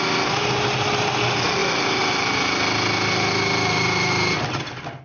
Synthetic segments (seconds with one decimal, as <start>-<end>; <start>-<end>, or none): none